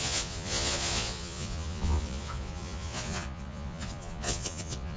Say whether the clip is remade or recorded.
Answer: remade